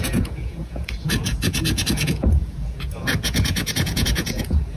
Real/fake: fake